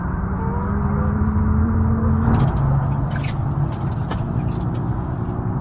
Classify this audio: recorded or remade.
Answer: recorded